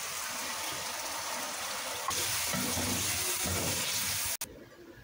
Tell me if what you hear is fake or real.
real